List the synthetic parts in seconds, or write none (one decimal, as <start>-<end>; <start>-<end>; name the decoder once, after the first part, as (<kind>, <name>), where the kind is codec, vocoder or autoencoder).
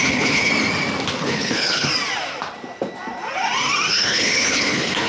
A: 0.0-0.5 (codec, HILCodec); 1.2-1.9; 3.9-5.1